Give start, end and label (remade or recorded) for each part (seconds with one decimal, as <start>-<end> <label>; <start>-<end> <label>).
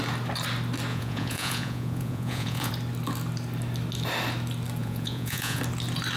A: 0.0-0.9 recorded; 0.9-2.7 remade; 2.7-4.8 recorded; 4.8-5.6 remade; 5.6-6.2 recorded